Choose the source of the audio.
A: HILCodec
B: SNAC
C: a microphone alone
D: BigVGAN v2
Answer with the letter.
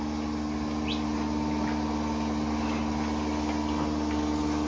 C